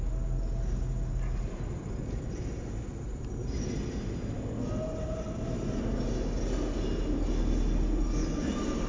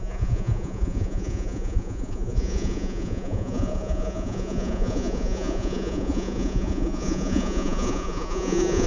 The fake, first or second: second